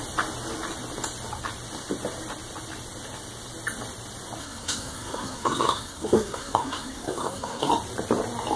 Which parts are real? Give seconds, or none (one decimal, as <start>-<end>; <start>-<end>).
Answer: 0.0-4.4; 7.7-8.6